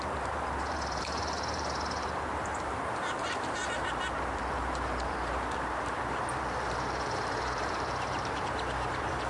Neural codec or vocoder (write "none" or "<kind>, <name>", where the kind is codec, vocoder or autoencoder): vocoder, BigVGAN v2